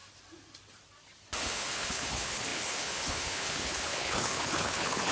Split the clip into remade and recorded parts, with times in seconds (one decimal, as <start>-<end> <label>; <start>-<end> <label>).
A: 0.0-1.4 recorded; 1.4-5.1 remade